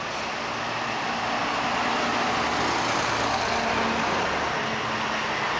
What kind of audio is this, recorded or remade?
recorded